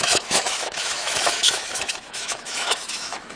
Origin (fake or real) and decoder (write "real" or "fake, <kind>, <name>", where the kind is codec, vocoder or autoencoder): fake, autoencoder, DAC-VAE